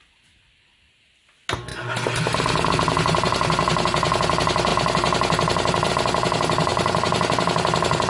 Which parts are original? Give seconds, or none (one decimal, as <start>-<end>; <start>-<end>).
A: 0.0-8.1